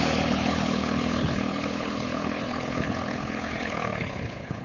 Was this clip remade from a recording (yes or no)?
yes